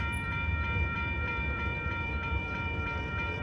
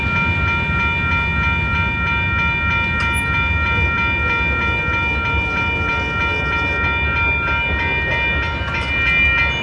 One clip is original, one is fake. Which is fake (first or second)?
first